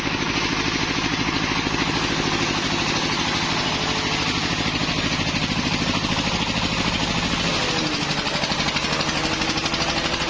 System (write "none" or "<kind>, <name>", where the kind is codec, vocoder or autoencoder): none